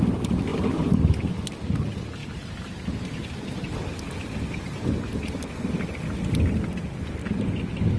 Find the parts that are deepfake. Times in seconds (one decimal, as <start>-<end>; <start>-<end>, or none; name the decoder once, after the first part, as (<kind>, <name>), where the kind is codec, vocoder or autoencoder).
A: 0.5-1.3 (vocoder, BigVGAN v2)